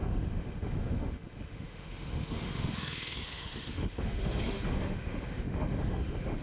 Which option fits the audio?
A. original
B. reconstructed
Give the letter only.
B